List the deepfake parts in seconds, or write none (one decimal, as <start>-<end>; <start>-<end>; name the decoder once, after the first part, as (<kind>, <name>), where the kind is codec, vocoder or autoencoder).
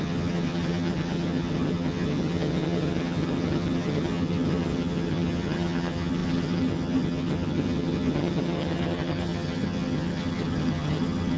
0.0-11.4 (vocoder, HiFi-GAN)